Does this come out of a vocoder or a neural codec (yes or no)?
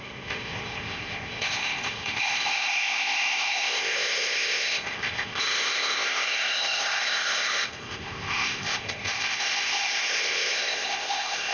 yes